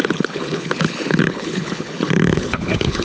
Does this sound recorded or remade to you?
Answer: remade